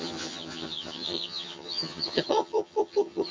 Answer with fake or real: fake